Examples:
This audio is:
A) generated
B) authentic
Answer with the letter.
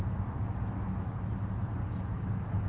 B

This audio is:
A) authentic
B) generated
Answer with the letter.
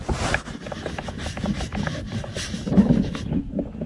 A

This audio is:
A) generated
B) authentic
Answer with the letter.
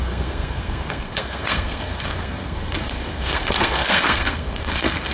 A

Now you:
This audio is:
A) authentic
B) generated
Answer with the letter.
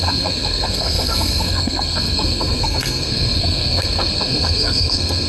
B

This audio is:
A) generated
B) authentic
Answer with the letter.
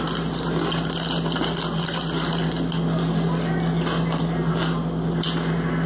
B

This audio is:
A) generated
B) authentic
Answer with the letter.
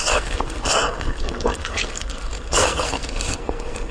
A